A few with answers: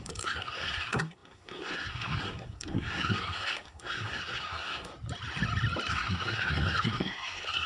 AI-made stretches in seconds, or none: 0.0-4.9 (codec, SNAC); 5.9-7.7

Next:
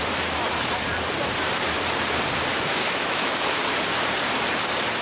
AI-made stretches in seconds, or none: 2.5-3.6 (autoencoder, DAC-VAE)

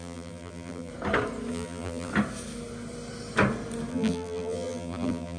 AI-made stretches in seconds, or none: 0.0-0.9 (vocoder, BigVGAN v2); 1.5-2.1; 3.9-5.4

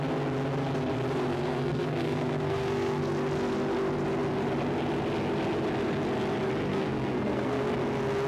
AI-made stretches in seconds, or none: 1.3-3.0 (codec, SNAC); 6.7-7.6

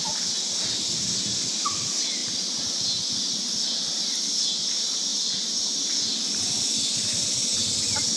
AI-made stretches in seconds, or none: none